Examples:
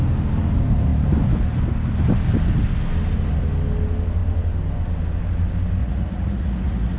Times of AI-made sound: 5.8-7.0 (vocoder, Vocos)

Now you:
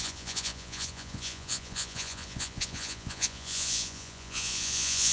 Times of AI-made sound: 0.0-5.1 (vocoder, Vocos)

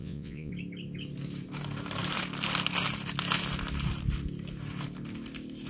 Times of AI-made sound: 0.0-0.5 (vocoder, Vocos)

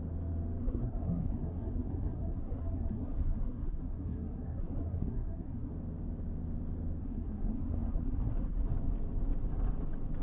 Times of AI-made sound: 0.6-5.7 (codec, SNAC); 7.0-8.6

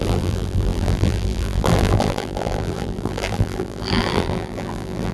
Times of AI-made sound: 0.0-5.1 (vocoder, BigVGAN v2)